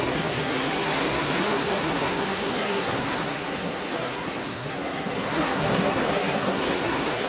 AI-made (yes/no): yes